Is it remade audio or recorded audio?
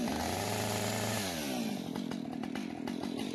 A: recorded